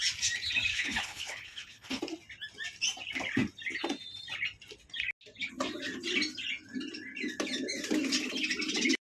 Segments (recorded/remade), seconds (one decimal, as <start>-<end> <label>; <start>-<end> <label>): 0.0-0.7 recorded; 0.7-2.0 remade; 2.0-9.0 recorded